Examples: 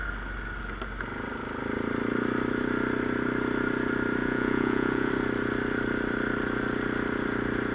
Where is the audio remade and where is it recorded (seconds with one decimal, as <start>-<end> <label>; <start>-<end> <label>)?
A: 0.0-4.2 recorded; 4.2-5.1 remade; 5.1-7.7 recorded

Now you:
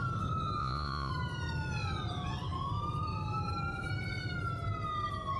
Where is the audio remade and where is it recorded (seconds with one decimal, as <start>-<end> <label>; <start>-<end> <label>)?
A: 0.0-0.6 recorded; 0.6-1.1 remade; 1.1-5.4 recorded

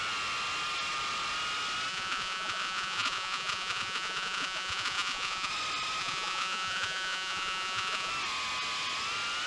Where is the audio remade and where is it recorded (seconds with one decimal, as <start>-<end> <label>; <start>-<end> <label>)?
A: 0.0-1.9 recorded; 1.9-5.5 remade; 5.5-6.0 recorded; 6.0-8.1 remade; 8.1-9.5 recorded

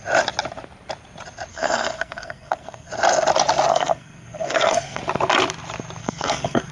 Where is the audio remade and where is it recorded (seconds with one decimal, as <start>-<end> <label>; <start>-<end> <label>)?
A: 0.0-1.5 recorded; 1.5-2.9 remade; 2.9-3.7 recorded; 3.7-5.0 remade; 5.0-6.0 recorded; 6.0-6.7 remade

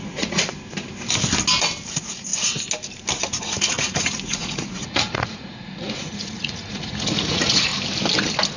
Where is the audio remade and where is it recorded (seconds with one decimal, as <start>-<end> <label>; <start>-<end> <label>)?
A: 0.0-0.5 remade; 0.5-1.9 recorded; 1.9-2.3 remade; 2.3-3.4 recorded; 3.4-7.7 remade; 7.7-8.6 recorded

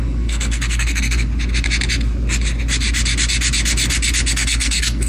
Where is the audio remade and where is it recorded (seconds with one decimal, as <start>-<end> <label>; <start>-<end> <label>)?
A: 0.0-1.3 remade; 1.3-4.3 recorded; 4.3-5.1 remade

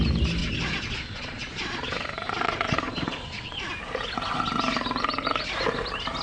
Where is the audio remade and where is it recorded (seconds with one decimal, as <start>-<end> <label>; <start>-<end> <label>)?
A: 0.0-0.4 recorded; 0.4-3.7 remade; 3.7-6.2 recorded

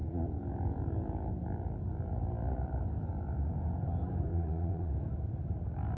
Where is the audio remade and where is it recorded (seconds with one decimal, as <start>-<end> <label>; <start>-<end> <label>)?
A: 0.0-4.3 recorded; 4.3-4.9 remade; 4.9-6.0 recorded